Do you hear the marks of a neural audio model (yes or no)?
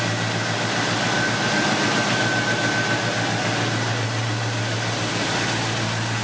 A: no